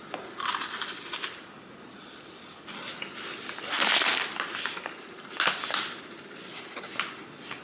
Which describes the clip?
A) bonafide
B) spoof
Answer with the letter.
A